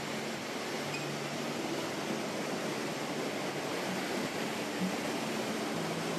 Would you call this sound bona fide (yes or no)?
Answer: yes